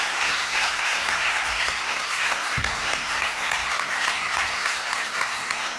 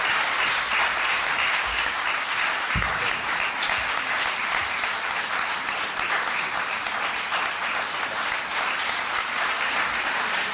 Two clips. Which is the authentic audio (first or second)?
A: second